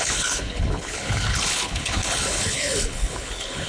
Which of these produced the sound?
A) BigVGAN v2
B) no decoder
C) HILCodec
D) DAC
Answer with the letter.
C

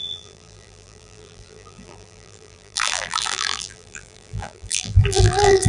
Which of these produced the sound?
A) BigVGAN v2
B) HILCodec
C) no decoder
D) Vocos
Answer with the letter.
A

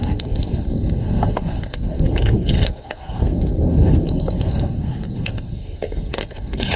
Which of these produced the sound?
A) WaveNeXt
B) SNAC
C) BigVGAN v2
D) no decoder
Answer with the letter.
B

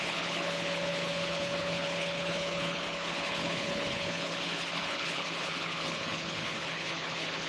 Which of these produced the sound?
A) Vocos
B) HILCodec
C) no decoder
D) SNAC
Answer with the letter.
B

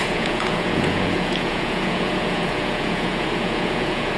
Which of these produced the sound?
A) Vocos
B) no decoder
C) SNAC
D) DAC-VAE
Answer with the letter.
A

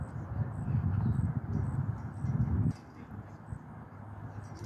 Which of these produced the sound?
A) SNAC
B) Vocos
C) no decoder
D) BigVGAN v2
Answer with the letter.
C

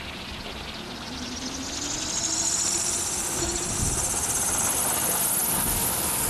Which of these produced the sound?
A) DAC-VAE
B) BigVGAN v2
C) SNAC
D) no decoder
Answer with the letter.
D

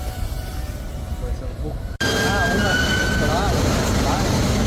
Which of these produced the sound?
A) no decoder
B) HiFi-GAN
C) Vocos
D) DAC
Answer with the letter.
A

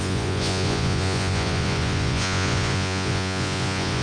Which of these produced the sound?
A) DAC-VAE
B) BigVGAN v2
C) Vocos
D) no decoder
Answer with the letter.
C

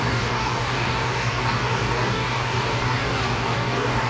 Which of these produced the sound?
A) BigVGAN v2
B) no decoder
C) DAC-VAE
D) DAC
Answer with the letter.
D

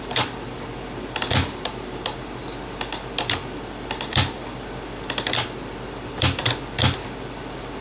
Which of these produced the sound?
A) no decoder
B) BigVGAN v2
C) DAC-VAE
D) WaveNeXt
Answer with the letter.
B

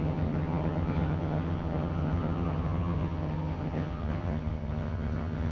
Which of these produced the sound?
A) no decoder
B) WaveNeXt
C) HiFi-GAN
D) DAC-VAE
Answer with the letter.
C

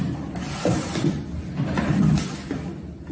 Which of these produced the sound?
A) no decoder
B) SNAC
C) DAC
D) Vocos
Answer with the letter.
A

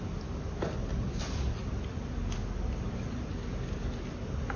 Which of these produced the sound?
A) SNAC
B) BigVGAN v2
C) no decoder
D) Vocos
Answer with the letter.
B